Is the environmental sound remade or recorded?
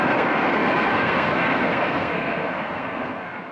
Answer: remade